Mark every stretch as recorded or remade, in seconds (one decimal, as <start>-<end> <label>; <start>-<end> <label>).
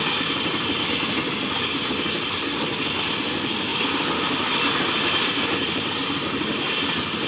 0.0-7.3 recorded